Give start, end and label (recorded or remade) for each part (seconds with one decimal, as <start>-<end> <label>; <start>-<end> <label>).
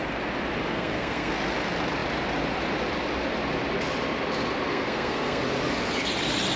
0.0-0.7 recorded; 0.7-1.3 remade; 1.3-4.7 recorded; 4.7-5.4 remade; 5.4-6.6 recorded